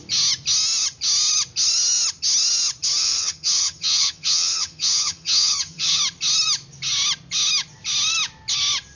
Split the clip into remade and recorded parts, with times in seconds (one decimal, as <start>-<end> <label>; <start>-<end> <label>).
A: 0.0-3.0 recorded; 3.0-6.0 remade; 6.0-9.0 recorded